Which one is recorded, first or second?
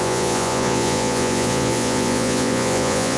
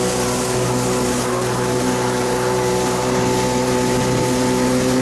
second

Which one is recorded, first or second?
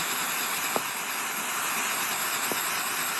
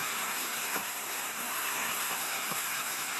first